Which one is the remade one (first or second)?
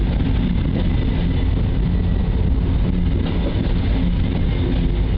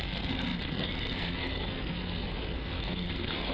second